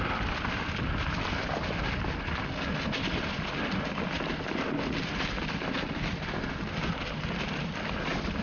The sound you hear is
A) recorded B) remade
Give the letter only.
A